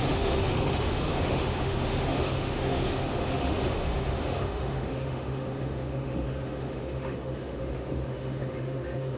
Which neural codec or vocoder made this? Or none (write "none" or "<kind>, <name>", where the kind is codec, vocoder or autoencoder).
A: autoencoder, DAC-VAE